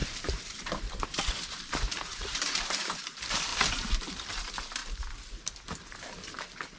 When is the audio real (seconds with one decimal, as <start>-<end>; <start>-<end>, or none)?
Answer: 3.0-6.8